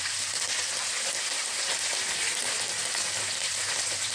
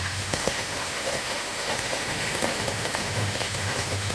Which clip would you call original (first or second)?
first